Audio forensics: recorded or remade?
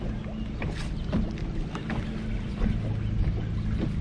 recorded